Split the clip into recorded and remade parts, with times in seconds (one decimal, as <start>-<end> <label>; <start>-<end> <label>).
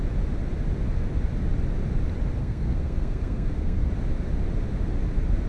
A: 0.0-2.4 recorded; 2.4-3.9 remade; 3.9-5.5 recorded